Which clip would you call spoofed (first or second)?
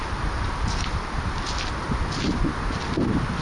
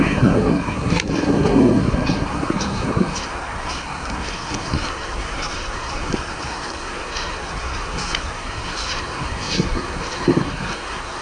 second